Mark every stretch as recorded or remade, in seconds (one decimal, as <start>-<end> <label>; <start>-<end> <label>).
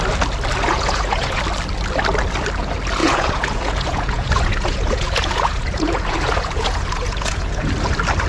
0.0-0.7 recorded; 0.7-1.4 remade; 1.4-3.0 recorded; 3.0-7.7 remade; 7.7-8.3 recorded